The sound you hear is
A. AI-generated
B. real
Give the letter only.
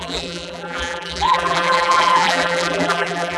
A